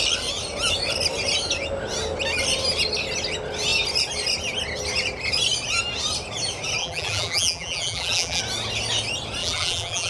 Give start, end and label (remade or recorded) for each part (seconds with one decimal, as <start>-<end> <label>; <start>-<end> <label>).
0.0-6.8 recorded; 6.8-8.4 remade; 8.4-9.4 recorded; 9.4-10.1 remade